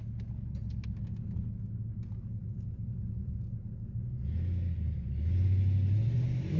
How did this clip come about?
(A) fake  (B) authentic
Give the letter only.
B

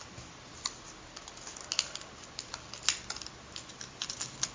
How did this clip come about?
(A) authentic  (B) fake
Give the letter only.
A